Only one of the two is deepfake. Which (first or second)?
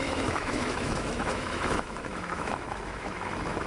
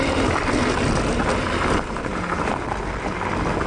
first